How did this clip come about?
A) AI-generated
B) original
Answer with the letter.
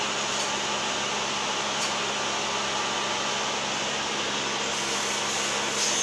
B